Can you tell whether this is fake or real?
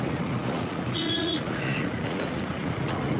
fake